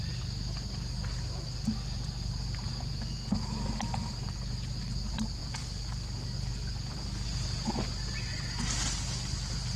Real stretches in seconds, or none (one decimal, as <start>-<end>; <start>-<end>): 0.0-9.8